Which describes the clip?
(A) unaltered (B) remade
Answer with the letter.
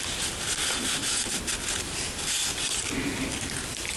A